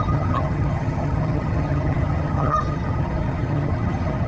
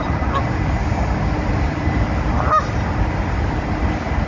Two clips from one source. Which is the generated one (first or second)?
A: first